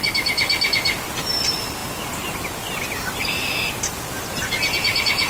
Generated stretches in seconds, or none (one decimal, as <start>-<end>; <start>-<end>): none